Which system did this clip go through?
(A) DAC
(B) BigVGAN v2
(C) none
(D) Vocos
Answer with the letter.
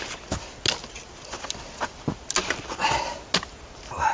C